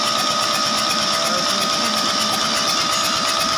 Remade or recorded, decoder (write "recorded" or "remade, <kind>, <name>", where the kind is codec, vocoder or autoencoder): recorded